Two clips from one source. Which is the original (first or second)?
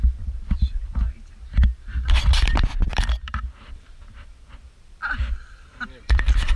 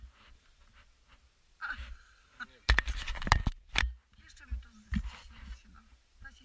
second